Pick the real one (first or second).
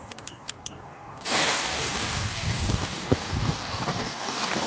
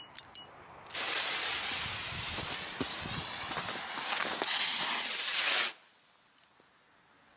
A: second